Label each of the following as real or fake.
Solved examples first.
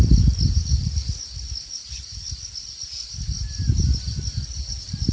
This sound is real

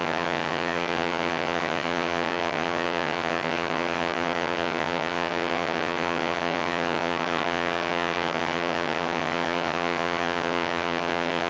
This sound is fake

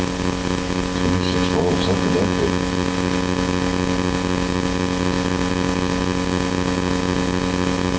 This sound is real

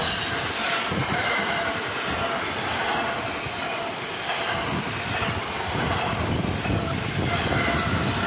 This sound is real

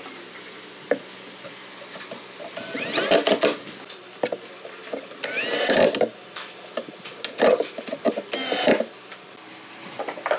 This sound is real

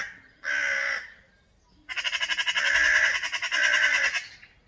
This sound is real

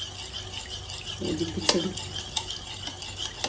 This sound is real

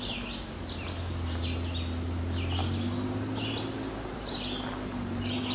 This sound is real